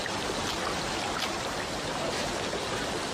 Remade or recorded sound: recorded